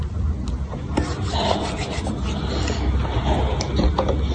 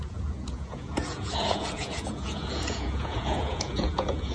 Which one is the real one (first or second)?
first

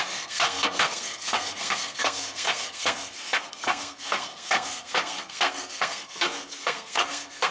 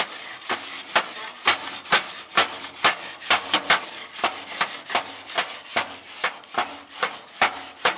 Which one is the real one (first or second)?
second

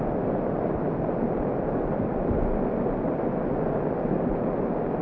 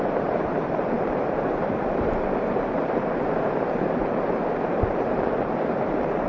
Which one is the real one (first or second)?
first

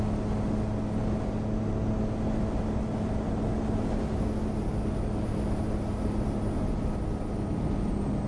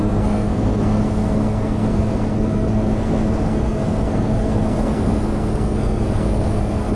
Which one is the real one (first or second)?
first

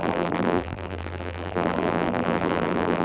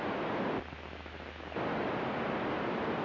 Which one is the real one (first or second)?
second